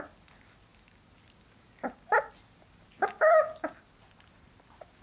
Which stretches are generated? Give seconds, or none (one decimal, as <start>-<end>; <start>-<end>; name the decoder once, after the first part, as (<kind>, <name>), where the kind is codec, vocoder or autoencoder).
none